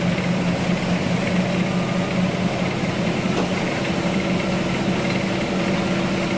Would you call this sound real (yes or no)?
yes